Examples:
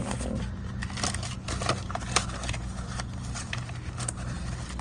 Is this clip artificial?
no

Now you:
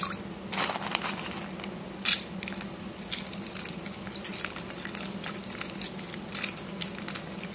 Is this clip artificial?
no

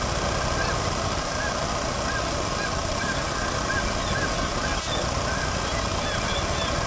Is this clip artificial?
no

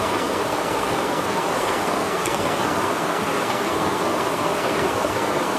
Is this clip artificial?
yes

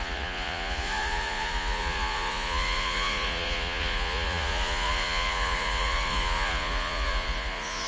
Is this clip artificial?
yes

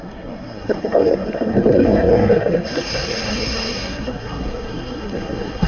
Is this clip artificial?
yes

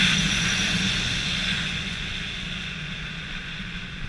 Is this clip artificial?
yes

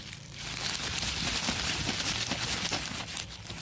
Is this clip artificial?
yes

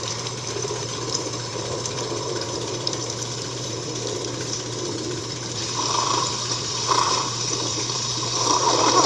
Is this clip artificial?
yes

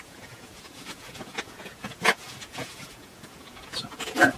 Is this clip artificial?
yes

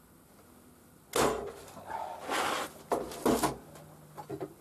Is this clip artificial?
no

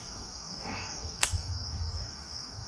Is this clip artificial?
yes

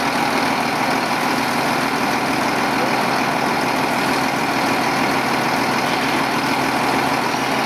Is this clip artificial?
no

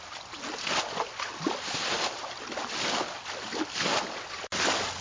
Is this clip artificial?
no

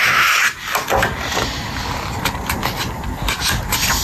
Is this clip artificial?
no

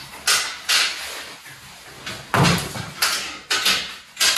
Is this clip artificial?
no